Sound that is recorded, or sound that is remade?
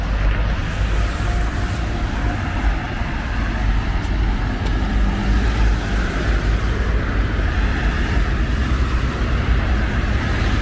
recorded